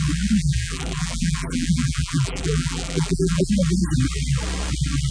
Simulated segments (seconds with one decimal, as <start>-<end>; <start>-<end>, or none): 0.4-3.5